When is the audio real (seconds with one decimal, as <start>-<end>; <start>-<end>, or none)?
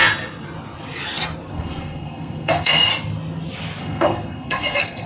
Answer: 0.0-1.5; 2.9-3.8